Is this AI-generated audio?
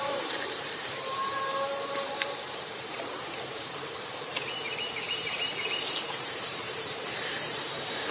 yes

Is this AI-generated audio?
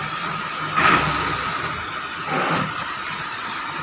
no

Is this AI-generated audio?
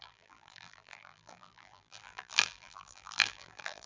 yes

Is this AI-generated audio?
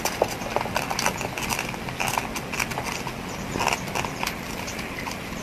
no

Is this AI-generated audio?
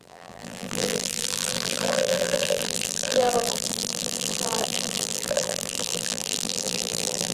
yes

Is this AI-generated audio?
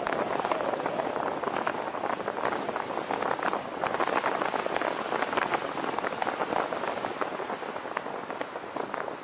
no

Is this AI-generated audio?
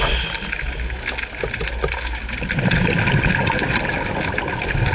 no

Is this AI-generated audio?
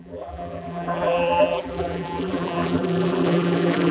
yes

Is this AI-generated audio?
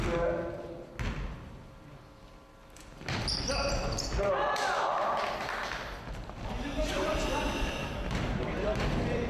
no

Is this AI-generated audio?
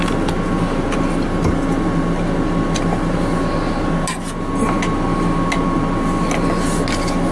no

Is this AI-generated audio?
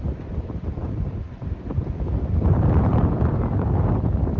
yes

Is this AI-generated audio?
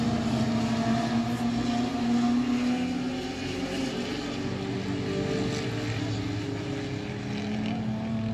no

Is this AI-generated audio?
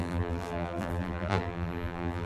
yes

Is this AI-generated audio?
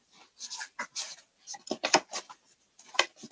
no